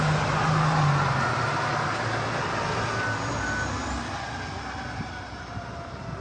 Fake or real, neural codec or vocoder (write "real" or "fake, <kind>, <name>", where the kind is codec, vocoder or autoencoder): real